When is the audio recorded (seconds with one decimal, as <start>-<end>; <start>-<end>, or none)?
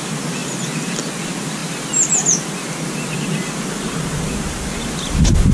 0.0-5.5